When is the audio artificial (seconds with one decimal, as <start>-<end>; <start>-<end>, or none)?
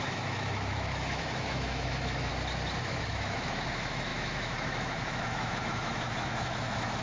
0.0-2.3; 2.8-7.0